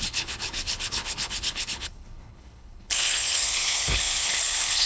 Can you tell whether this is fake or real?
fake